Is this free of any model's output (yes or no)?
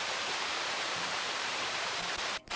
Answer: no